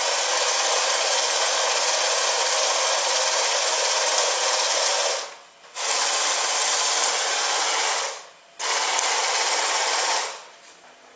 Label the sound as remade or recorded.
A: recorded